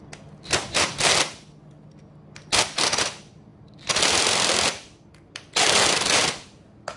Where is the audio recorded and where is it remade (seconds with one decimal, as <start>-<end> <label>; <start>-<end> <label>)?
0.0-7.0 recorded